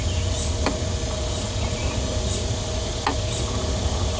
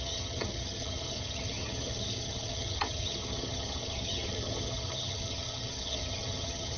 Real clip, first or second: first